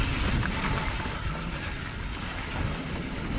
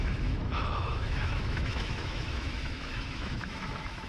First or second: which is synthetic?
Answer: second